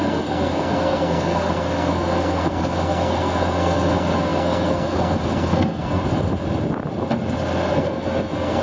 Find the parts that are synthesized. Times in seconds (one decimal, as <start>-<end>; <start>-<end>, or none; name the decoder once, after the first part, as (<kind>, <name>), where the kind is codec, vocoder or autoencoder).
0.0-6.0 (codec, SNAC); 7.7-8.6